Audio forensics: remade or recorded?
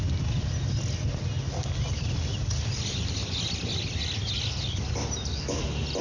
recorded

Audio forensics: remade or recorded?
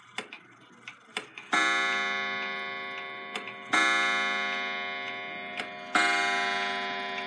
recorded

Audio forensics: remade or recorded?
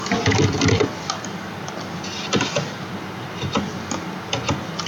recorded